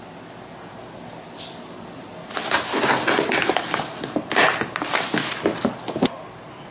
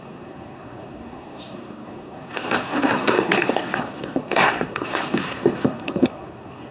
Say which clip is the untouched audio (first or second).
first